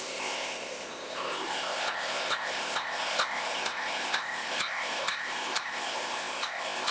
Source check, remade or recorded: remade